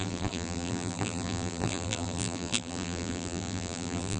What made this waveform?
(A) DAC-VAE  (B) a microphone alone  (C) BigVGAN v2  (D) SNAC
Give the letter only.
C